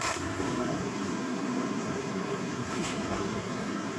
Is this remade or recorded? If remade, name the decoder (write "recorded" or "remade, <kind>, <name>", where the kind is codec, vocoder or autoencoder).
remade, codec, SNAC